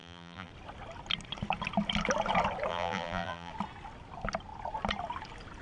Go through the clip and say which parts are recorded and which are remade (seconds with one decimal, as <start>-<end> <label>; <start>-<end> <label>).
0.0-0.5 remade; 0.5-2.7 recorded; 2.7-3.5 remade; 3.5-5.6 recorded